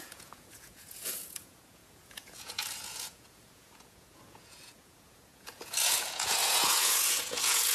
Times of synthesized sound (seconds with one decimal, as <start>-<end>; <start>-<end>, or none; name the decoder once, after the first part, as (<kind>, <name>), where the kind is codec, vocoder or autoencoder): 0.0-7.7 (vocoder, Vocos)